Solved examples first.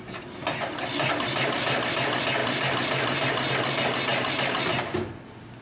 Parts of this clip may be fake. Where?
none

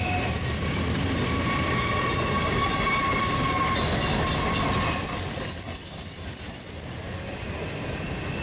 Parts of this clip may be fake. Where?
none

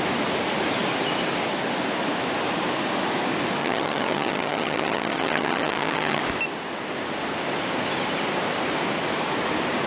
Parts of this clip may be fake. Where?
3.6-6.2 (vocoder, HiFi-GAN)

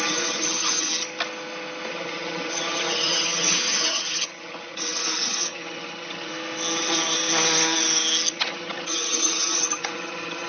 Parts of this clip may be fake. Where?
0.0-0.9 (vocoder, HiFi-GAN); 1.9-6.3; 8.3-10.5